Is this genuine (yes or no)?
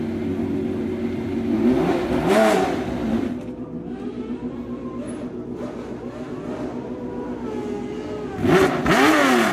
yes